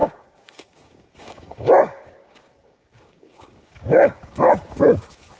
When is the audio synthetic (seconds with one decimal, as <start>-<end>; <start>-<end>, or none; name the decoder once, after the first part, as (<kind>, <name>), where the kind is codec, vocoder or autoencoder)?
0.0-5.4 (codec, DAC)